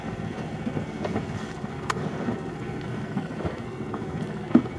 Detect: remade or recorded remade